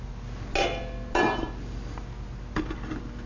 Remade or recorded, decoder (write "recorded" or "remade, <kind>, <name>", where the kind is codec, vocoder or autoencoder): recorded